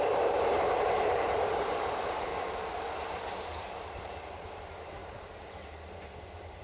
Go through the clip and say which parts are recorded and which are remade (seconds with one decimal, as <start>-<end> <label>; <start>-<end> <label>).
0.0-2.3 remade; 2.3-3.0 recorded; 3.0-6.6 remade